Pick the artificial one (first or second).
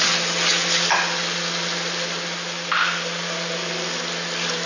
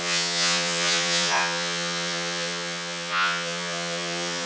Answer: second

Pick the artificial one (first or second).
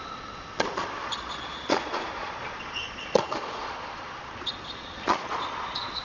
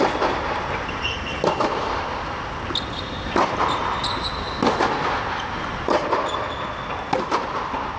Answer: first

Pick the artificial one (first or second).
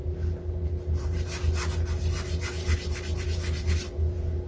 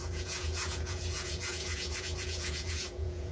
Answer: second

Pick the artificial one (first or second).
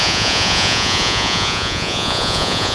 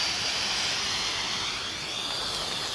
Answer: first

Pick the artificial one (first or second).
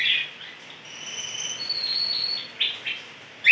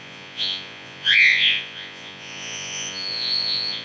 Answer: second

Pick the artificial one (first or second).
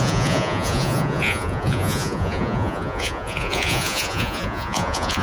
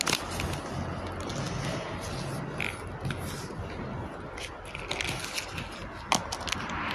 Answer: first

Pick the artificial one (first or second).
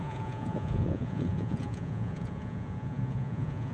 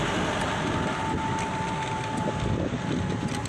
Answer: first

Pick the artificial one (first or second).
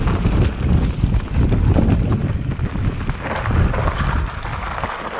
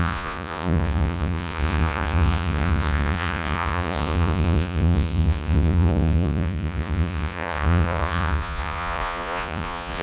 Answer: second